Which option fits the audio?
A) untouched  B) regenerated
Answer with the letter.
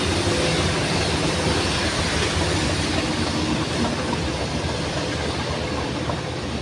A